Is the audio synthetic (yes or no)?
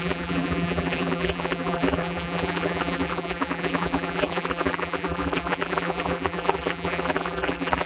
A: yes